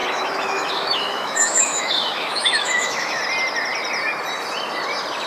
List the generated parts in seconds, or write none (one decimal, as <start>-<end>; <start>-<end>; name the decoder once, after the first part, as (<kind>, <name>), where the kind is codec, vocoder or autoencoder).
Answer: 0.0-3.2 (autoencoder, DAC-VAE)